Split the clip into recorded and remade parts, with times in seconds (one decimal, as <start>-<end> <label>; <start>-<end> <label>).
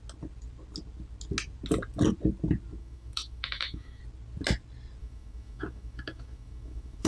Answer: 0.0-2.8 recorded; 2.8-4.0 remade; 4.0-5.0 recorded; 5.0-7.1 remade